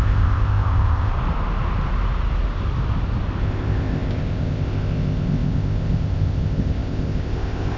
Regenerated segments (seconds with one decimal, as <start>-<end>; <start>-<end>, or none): 0.0-1.1; 3.4-7.8